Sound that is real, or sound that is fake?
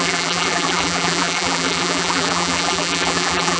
fake